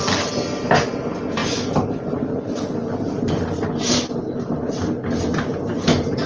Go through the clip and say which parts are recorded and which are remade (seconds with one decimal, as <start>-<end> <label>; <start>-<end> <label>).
0.0-6.3 recorded